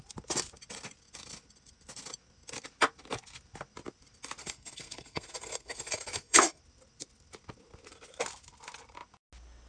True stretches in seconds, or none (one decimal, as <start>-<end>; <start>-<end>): 0.0-4.4; 6.6-9.7